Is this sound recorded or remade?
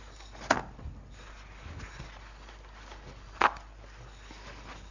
recorded